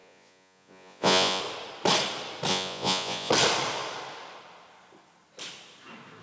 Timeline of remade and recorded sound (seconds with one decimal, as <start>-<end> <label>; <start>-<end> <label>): 0.0-1.4 remade; 1.4-2.5 recorded; 2.5-3.3 remade; 3.3-6.2 recorded